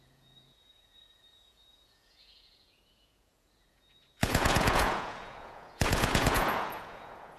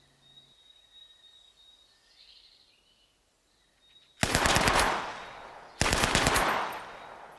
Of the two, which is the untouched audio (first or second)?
second